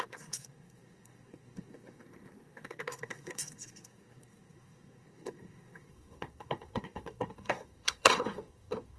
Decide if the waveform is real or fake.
fake